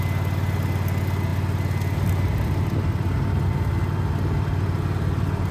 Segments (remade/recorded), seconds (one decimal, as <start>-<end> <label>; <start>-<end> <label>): 0.0-5.5 recorded